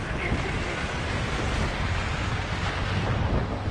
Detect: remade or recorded recorded